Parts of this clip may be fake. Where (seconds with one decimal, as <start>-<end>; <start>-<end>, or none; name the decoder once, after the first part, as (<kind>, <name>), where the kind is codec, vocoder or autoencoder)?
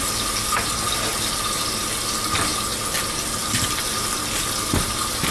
none